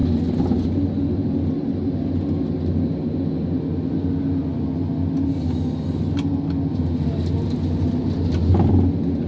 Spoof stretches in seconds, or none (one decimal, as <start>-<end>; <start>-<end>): none